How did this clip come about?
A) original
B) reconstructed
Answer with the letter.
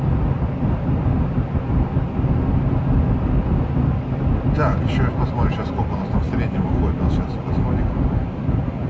A